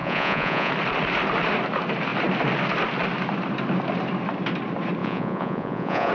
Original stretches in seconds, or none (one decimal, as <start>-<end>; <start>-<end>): 0.7-5.0